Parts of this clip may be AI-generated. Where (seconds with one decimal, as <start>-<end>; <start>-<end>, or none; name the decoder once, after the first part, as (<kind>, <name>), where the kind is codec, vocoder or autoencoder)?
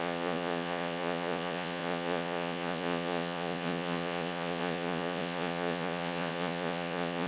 0.0-7.3 (vocoder, Vocos)